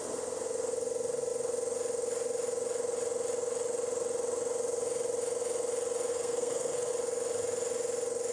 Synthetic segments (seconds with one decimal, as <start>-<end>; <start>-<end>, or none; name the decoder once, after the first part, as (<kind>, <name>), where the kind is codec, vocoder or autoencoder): 6.1-6.9 (codec, SNAC)